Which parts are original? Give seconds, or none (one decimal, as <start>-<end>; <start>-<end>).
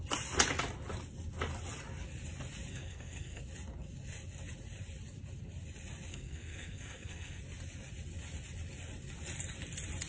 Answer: 0.0-2.7; 3.4-6.1; 7.4-10.1